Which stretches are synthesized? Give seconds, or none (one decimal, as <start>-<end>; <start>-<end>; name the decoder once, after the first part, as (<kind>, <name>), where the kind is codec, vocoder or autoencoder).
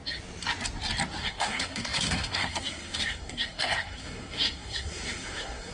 1.2-5.7 (codec, SNAC)